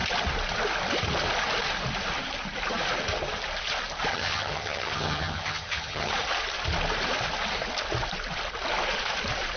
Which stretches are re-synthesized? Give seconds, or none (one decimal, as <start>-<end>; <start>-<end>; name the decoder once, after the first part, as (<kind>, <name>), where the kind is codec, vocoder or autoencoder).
4.1-6.1 (vocoder, HiFi-GAN)